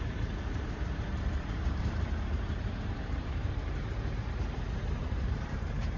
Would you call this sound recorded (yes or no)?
no